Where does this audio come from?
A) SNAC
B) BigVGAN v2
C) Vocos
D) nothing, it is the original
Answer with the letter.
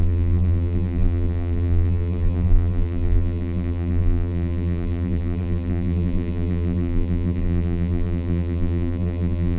B